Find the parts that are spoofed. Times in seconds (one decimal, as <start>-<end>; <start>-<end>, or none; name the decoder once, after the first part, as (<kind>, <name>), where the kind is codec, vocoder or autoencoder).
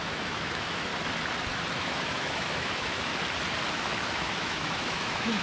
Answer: 0.0-0.9 (autoencoder, DAC-VAE); 1.7-3.1; 3.7-5.4